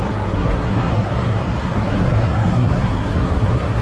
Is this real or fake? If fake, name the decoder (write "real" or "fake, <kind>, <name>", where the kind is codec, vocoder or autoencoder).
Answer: fake, codec, SNAC